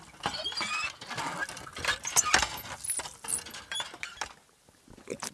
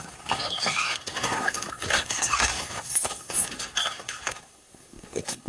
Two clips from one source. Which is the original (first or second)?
first